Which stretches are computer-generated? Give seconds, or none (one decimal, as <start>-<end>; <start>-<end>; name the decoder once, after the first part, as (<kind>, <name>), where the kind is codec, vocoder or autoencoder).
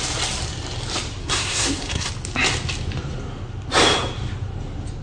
1.2-2.1 (codec, SNAC)